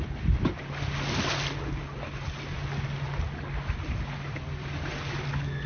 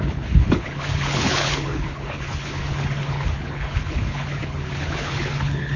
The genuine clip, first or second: first